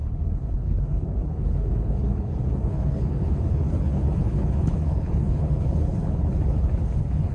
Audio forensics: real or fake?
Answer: fake